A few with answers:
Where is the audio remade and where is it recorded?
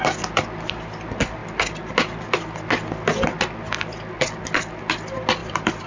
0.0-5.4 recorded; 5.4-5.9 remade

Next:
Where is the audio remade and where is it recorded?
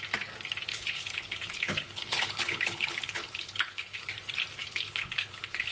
0.0-0.7 recorded; 0.7-4.1 remade; 4.1-4.6 recorded; 4.6-5.7 remade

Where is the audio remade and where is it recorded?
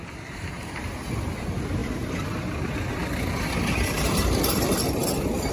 0.0-5.5 recorded